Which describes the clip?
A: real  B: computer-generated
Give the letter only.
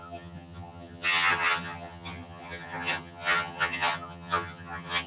B